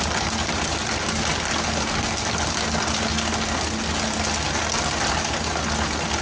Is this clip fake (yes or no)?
no